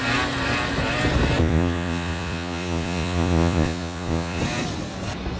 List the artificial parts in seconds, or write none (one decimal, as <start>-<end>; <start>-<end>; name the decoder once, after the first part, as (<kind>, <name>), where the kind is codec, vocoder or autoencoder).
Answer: 1.4-4.4 (vocoder, Vocos)